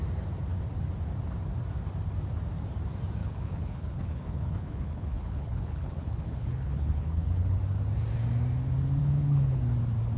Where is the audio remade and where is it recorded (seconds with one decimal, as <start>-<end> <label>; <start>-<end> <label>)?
0.0-3.2 recorded; 3.2-7.6 remade; 7.6-9.0 recorded; 9.0-9.6 remade; 9.6-10.2 recorded